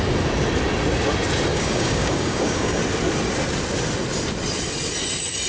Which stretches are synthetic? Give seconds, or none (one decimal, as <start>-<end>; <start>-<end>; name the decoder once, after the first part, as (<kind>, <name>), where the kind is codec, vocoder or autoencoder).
1.5-2.8 (codec, DAC)